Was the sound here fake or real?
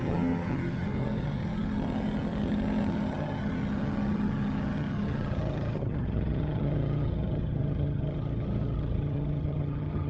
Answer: fake